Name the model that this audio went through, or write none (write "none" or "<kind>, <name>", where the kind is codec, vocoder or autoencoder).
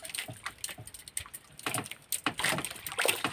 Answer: none